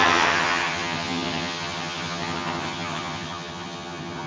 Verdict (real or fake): fake